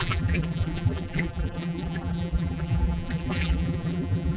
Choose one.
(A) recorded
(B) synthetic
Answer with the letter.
B